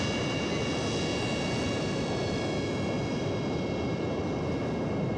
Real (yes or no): yes